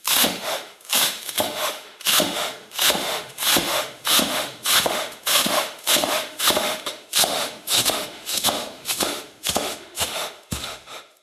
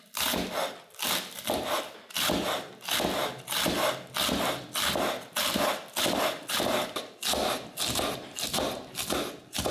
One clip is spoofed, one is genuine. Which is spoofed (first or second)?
first